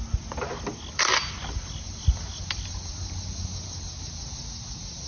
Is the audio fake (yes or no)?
no